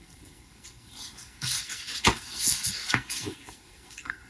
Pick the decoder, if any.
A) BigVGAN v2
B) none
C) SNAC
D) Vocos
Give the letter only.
C